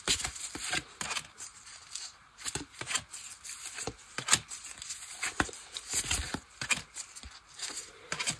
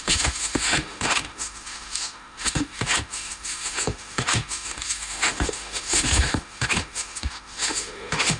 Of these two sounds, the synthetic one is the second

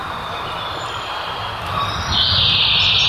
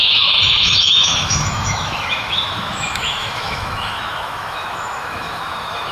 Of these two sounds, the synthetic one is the second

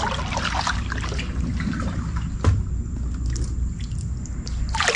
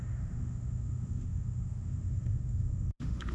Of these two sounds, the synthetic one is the second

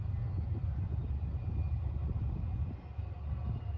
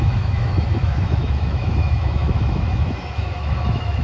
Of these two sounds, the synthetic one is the second